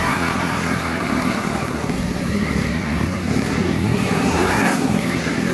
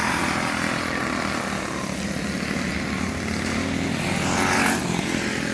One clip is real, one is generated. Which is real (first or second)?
second